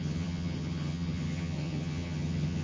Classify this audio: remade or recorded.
remade